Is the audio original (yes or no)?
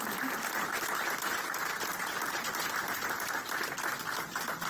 yes